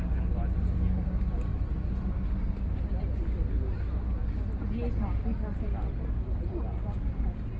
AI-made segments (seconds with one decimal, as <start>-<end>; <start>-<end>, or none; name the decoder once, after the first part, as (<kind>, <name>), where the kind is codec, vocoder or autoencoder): none